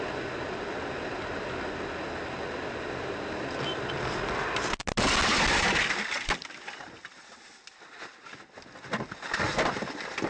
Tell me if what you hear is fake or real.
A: real